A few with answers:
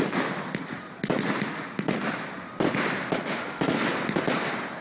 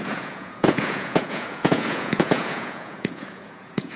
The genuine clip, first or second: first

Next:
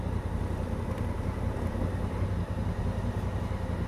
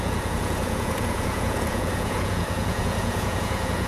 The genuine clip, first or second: first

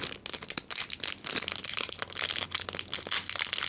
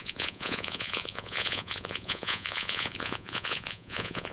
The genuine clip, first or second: first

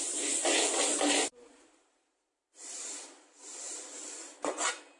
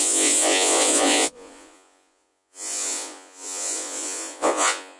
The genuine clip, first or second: first